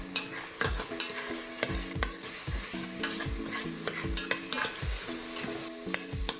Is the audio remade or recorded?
recorded